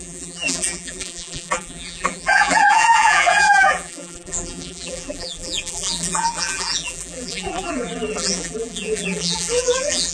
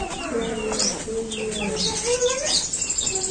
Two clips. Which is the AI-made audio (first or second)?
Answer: first